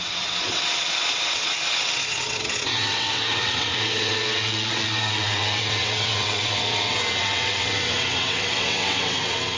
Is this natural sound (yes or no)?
no